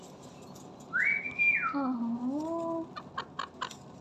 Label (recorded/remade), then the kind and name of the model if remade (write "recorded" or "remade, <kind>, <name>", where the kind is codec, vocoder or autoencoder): recorded